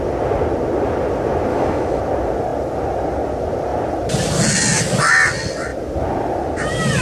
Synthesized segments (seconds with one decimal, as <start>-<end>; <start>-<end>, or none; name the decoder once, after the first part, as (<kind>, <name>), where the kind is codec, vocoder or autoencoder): 1.5-2.0 (autoencoder, DAC-VAE)